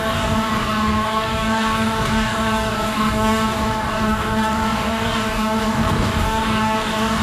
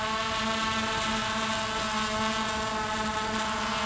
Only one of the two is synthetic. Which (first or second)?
first